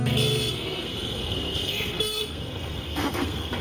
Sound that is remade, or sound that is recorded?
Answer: remade